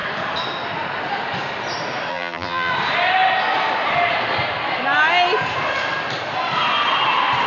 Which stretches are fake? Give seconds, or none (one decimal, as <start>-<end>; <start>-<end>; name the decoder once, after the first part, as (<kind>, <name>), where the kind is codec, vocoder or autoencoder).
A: 2.1-2.7 (vocoder, BigVGAN v2)